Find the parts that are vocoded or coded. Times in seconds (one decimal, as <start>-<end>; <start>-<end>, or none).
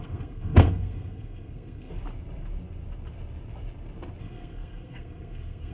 0.0-1.9; 4.2-5.7